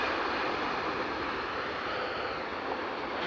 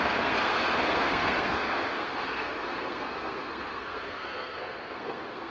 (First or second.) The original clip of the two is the first